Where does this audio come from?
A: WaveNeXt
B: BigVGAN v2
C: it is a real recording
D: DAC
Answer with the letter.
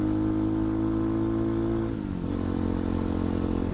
C